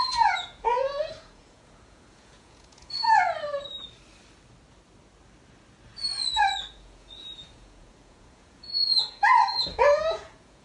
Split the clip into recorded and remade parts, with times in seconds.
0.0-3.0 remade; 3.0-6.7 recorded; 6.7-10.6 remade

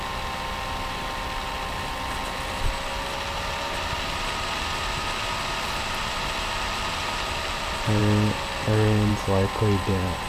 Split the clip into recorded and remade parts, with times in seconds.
0.0-10.3 recorded